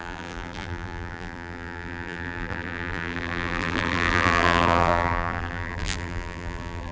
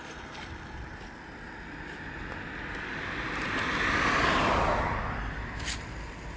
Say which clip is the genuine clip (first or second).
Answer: second